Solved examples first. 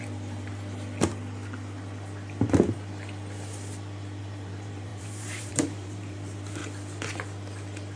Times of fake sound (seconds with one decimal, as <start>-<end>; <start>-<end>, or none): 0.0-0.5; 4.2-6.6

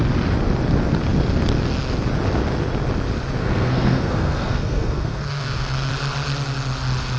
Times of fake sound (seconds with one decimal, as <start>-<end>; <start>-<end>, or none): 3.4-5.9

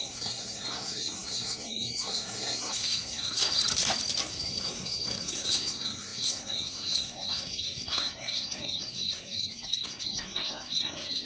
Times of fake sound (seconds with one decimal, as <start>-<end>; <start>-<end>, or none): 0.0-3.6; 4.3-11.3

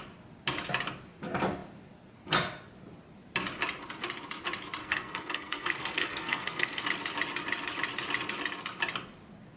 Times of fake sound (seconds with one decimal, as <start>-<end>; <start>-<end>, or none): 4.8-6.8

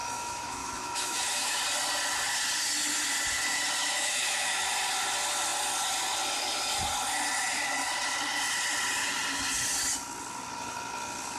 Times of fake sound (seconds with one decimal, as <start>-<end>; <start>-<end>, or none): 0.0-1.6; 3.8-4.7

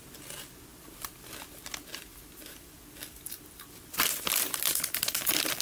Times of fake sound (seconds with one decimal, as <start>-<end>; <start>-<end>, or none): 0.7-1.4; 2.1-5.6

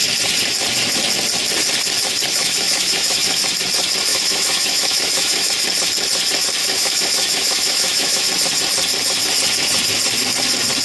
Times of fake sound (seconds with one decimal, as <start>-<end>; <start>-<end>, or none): 2.4-3.4; 4.1-5.5; 6.6-8.2